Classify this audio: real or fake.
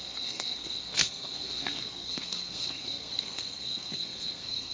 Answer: fake